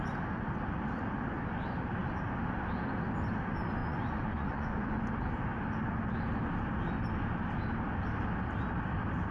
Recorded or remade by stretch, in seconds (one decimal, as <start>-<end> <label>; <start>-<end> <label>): 0.0-3.8 recorded; 3.8-5.1 remade; 5.1-9.3 recorded